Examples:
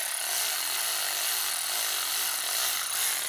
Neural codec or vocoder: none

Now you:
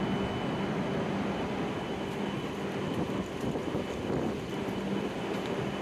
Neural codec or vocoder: none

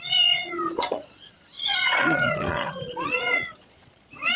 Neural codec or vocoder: vocoder, Vocos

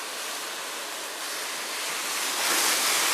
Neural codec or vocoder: none